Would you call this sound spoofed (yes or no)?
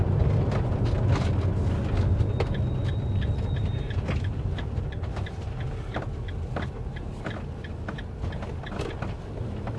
no